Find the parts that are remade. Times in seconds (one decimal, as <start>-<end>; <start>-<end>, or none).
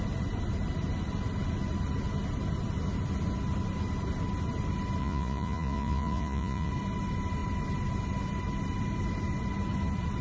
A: 5.0-6.7